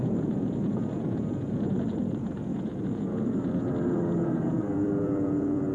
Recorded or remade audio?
remade